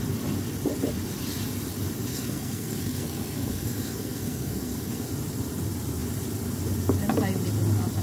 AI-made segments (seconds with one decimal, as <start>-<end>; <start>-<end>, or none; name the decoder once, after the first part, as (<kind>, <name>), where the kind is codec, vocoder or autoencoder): 2.1-5.1 (codec, SNAC)